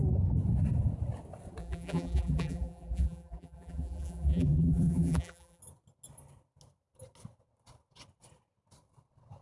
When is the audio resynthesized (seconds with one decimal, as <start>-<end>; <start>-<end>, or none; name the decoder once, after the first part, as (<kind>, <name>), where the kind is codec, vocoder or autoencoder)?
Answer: 1.6-5.6 (vocoder, BigVGAN v2)